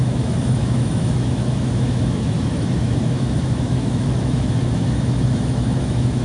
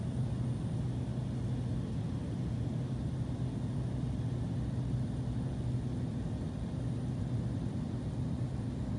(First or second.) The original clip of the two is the second